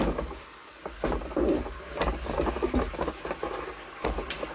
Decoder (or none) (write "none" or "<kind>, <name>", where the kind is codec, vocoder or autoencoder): none